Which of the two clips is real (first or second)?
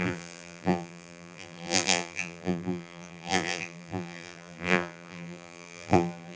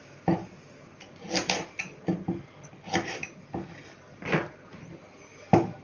second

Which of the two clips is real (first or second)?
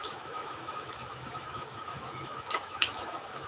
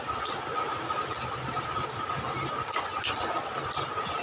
second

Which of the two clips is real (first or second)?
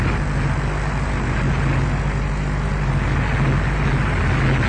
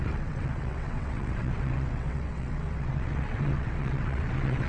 first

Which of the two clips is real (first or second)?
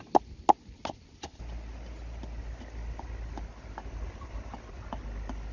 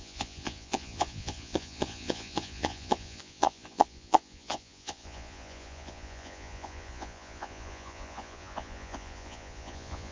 first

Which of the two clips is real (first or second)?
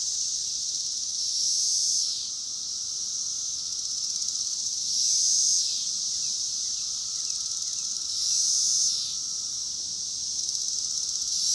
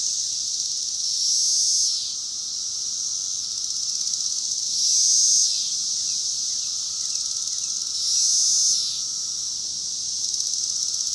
second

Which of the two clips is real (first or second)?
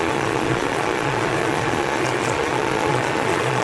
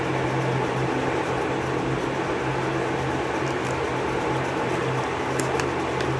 second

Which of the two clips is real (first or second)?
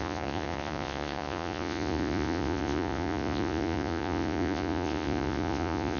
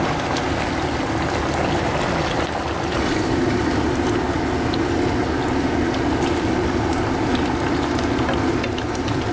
second